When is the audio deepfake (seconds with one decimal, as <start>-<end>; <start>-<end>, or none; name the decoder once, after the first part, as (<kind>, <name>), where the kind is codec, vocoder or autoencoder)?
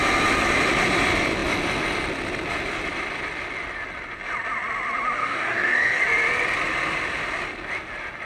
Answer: 5.2-6.0 (codec, DAC)